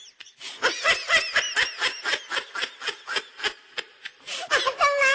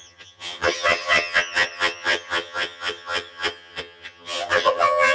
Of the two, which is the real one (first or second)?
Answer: first